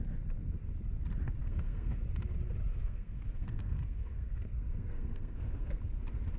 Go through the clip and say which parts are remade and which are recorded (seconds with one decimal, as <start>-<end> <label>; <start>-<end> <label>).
0.0-1.4 recorded; 1.4-2.0 remade; 2.0-2.7 recorded; 2.7-5.8 remade; 5.8-6.4 recorded